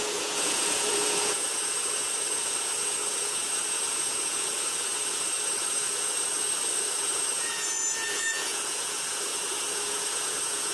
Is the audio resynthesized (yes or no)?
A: yes